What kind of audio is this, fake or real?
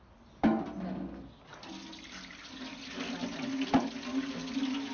real